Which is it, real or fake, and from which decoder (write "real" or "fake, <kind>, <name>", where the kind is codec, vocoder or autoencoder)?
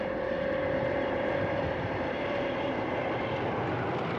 fake, vocoder, BigVGAN v2